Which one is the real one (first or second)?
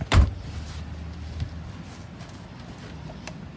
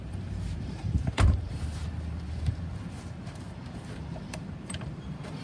first